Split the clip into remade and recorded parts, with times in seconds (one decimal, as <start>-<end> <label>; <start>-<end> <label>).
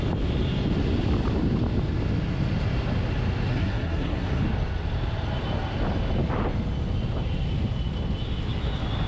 0.0-3.5 recorded; 3.5-4.4 remade; 4.4-9.1 recorded